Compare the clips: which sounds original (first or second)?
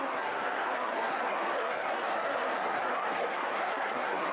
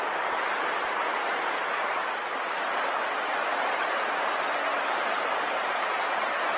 second